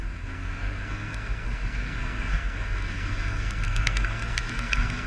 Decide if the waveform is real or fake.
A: fake